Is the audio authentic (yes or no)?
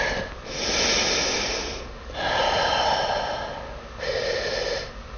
yes